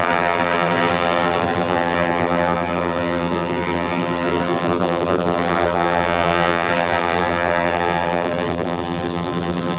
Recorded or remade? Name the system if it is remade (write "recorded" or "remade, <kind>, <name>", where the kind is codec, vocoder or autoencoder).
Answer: remade, vocoder, BigVGAN v2